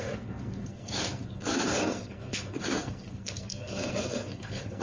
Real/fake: fake